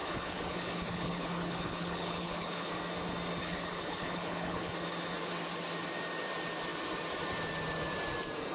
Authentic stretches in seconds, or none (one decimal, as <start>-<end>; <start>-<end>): 2.7-3.4; 4.7-8.5